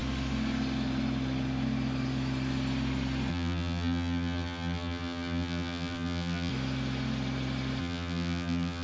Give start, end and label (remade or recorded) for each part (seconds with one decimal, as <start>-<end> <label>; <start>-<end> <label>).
0.0-3.3 recorded; 3.3-6.5 remade; 6.5-7.8 recorded; 7.8-8.8 remade